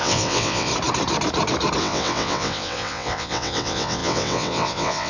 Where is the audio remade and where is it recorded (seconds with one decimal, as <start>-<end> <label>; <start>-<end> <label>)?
0.0-0.7 remade; 0.7-1.8 recorded; 1.8-5.1 remade